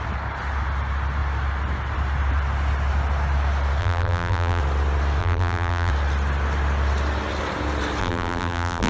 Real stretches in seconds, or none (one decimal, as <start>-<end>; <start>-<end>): 0.0-3.8; 4.6-5.2; 5.9-8.0